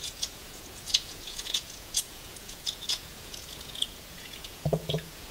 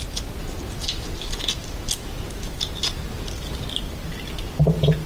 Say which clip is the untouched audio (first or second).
second